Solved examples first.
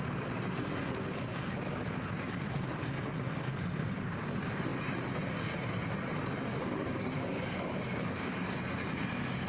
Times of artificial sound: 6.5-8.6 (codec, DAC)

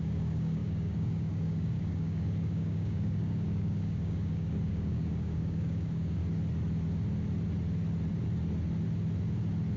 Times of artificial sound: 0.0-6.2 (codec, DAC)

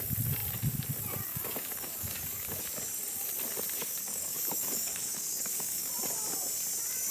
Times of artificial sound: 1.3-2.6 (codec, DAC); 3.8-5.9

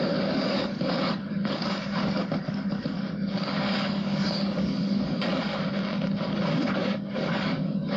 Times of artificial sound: 0.0-5.5 (codec, DAC); 6.3-8.0

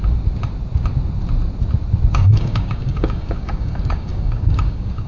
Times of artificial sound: 2.1-5.1 (codec, DAC)